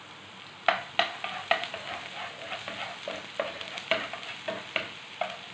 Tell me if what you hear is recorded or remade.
recorded